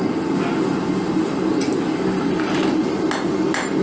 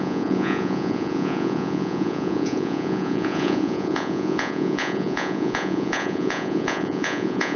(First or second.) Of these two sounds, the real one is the first